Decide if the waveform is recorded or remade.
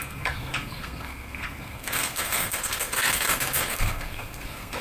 remade